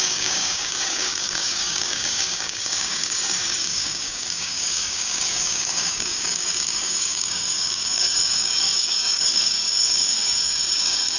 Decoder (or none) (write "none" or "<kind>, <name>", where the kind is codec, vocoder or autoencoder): codec, DAC